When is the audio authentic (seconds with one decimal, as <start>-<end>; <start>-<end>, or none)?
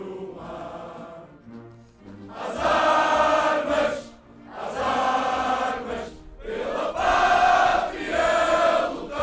0.0-9.2